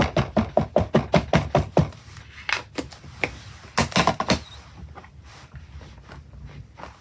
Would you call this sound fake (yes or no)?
no